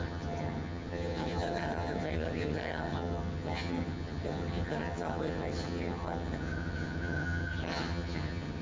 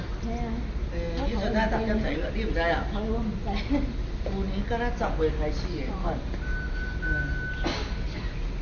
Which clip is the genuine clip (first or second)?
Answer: second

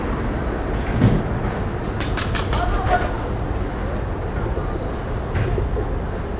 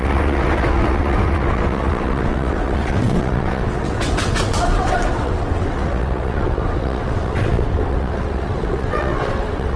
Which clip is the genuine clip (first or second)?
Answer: first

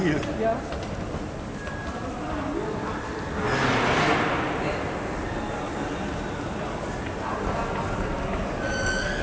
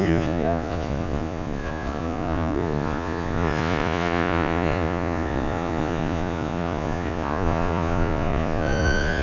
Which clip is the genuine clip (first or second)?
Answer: first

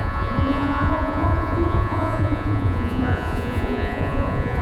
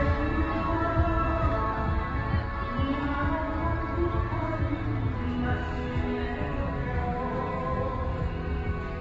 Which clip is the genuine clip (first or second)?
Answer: second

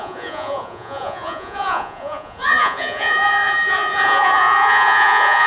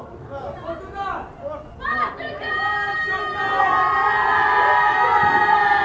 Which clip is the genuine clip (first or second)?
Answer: second